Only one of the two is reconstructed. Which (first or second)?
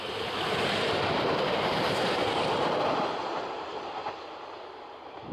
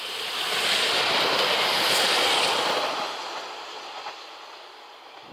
first